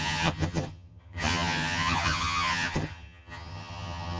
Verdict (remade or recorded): remade